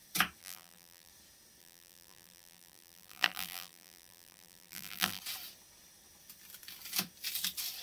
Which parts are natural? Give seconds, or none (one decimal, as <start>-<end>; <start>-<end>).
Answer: 0.0-0.4; 1.1-1.6; 5.2-7.8